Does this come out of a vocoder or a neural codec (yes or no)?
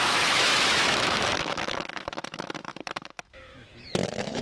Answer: yes